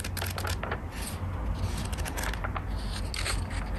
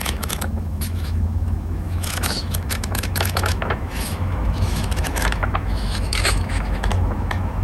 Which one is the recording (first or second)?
first